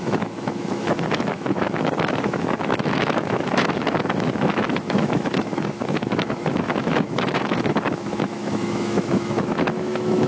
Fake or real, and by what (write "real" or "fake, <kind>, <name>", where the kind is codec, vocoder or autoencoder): fake, autoencoder, DAC-VAE